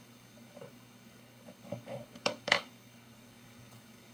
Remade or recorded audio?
remade